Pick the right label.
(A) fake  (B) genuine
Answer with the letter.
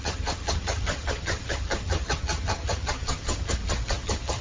A